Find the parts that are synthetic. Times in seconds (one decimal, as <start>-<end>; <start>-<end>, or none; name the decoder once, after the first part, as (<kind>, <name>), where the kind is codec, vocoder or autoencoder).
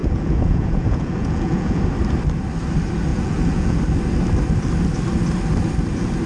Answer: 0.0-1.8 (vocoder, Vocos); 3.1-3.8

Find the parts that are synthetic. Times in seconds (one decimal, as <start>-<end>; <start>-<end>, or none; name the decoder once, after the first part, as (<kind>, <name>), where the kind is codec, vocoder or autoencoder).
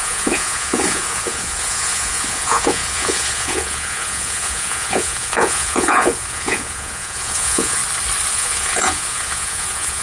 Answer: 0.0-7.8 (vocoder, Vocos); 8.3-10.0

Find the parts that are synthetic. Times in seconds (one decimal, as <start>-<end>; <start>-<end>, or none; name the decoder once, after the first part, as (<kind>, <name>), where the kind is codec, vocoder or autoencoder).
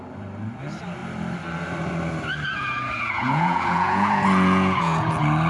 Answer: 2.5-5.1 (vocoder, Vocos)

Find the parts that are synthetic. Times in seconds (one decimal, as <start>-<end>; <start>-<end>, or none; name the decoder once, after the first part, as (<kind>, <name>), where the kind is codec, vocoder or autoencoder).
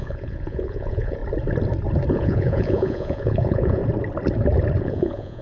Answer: 0.0-1.2 (vocoder, Vocos); 2.1-3.8; 4.8-5.4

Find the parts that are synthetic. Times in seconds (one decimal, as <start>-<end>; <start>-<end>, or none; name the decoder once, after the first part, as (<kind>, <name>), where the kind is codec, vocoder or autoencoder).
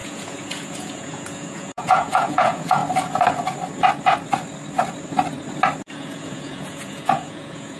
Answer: 0.0-2.8 (vocoder, Vocos); 5.8-7.8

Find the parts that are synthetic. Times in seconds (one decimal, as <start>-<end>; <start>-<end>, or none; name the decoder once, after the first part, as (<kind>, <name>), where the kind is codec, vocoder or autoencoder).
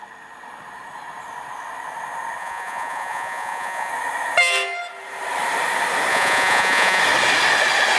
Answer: 2.4-3.9 (vocoder, Vocos); 6.1-7.0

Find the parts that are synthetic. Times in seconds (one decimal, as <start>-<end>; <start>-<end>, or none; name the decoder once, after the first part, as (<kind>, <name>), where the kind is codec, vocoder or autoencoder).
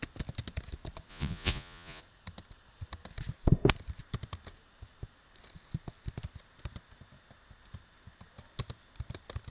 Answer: 1.1-2.0 (vocoder, Vocos)